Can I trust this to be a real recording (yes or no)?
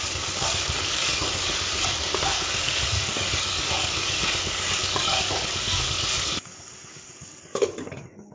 no